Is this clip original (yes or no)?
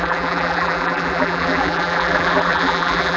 no